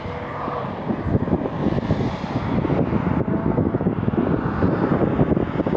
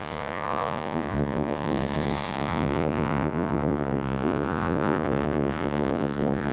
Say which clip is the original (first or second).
first